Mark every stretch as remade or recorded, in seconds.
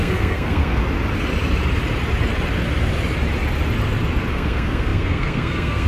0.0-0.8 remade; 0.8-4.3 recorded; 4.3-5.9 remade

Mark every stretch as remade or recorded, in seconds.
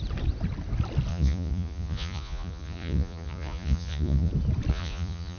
0.0-1.1 recorded; 1.1-4.3 remade; 4.3-4.7 recorded; 4.7-5.4 remade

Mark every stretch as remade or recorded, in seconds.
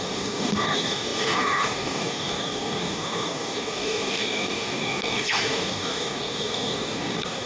0.0-7.5 remade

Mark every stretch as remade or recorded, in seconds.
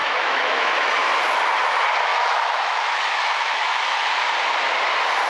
0.0-1.2 remade; 1.2-2.1 recorded; 2.1-4.1 remade; 4.1-5.3 recorded